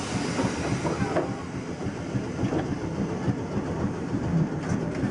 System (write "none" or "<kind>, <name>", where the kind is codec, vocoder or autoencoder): none